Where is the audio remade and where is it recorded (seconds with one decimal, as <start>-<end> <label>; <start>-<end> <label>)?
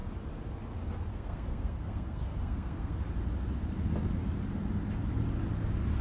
0.0-1.1 recorded; 1.1-3.0 remade; 3.0-6.0 recorded